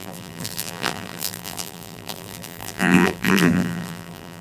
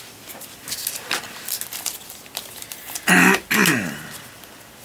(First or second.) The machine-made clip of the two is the first